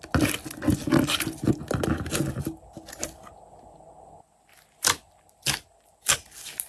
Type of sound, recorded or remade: recorded